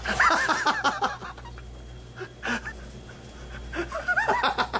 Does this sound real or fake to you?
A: real